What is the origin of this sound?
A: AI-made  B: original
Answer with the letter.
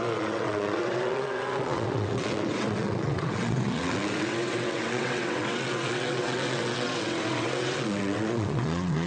A